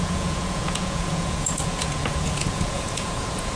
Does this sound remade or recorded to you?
remade